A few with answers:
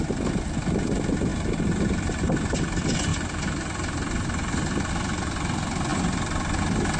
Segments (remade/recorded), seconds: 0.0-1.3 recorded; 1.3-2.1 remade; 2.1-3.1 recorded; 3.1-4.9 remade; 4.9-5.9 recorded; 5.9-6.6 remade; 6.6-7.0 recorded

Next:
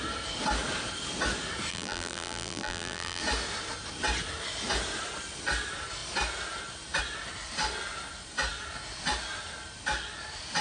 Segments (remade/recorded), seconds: 0.0-1.7 recorded; 1.7-3.2 remade; 3.2-10.6 recorded

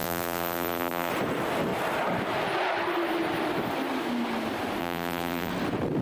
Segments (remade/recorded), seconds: 0.0-1.1 remade; 1.1-4.8 recorded; 4.8-5.5 remade; 5.5-6.0 recorded

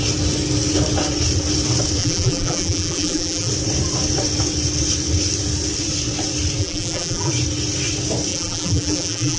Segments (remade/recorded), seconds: 0.0-2.0 recorded; 2.0-3.5 remade; 3.5-6.6 recorded; 6.6-7.3 remade; 7.3-8.3 recorded; 8.3-9.4 remade

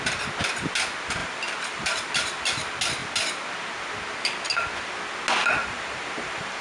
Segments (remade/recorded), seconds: 0.0-1.2 recorded; 1.2-2.1 remade; 2.1-5.6 recorded; 5.6-6.6 remade